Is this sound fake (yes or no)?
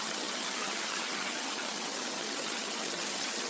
yes